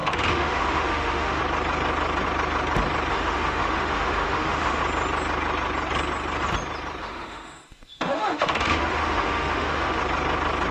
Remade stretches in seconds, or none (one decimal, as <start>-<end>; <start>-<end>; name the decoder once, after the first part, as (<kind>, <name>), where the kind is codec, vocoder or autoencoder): 0.0-1.4 (autoencoder, DAC-VAE); 3.1-4.8; 7.0-10.0